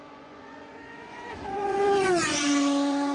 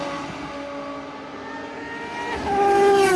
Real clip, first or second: second